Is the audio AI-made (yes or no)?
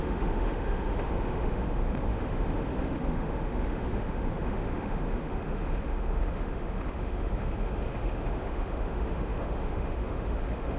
yes